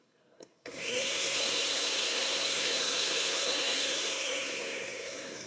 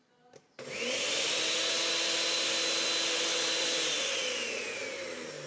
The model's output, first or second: first